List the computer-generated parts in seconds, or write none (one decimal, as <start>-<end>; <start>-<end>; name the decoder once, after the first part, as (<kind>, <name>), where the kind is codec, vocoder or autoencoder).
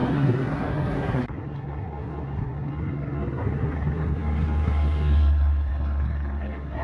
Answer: 0.0-6.8 (codec, SNAC)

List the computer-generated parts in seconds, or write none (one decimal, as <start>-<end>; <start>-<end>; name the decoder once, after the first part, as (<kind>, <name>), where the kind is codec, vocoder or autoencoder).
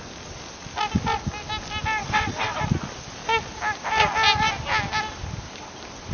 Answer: 2.0-2.6 (vocoder, WaveNeXt)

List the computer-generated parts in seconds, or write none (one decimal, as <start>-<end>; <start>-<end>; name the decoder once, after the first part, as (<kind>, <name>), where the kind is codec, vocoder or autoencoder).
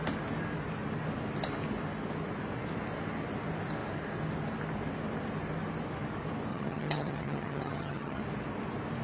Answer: 6.5-8.2 (vocoder, HiFi-GAN)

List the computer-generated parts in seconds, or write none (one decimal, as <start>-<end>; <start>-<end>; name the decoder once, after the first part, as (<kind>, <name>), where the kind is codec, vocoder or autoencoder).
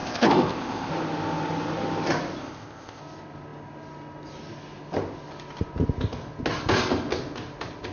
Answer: 0.0-0.9 (codec, ZipCodec); 2.4-3.0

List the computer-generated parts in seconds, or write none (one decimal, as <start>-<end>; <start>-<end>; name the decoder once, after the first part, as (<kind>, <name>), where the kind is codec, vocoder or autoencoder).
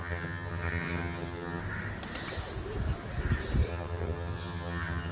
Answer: 0.0-1.6 (vocoder, HiFi-GAN); 3.7-5.1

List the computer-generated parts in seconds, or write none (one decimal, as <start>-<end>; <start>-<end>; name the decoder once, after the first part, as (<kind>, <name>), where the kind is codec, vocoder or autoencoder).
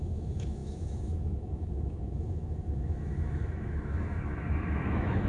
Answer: 0.0-5.3 (autoencoder, DAC-VAE)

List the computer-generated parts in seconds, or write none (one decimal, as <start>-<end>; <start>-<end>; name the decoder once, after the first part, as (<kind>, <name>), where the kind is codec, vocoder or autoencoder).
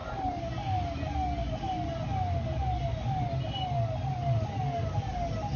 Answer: none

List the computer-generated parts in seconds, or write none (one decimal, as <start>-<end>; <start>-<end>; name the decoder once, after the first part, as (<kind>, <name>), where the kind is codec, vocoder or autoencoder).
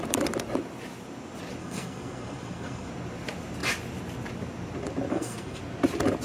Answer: 1.6-2.9 (codec, SNAC); 5.1-5.6